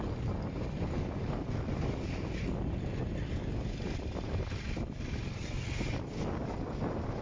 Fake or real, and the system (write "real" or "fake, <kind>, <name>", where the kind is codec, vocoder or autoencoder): real